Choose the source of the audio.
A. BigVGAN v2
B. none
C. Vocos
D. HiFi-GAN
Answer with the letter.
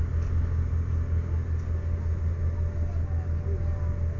B